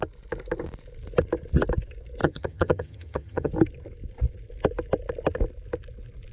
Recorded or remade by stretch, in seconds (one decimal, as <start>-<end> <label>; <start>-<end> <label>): 0.0-2.2 recorded; 2.2-3.5 remade; 3.5-6.3 recorded